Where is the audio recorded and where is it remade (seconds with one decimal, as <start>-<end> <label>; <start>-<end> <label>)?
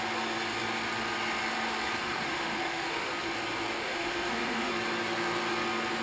0.0-2.0 recorded; 2.0-3.1 remade; 3.1-3.8 recorded; 3.8-4.7 remade; 4.7-6.0 recorded